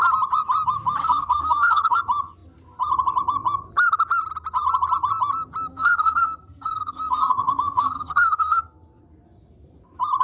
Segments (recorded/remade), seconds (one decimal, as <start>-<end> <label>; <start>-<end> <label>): 0.0-1.0 recorded; 1.0-2.0 remade; 2.0-5.7 recorded; 5.7-8.6 remade; 8.6-10.2 recorded